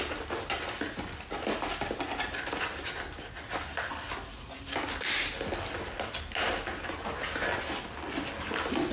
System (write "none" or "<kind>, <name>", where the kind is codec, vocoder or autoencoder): none